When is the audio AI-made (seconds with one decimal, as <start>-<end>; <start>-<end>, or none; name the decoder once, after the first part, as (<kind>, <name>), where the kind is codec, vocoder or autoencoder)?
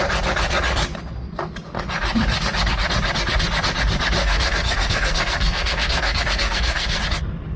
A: 4.2-7.0 (codec, SNAC)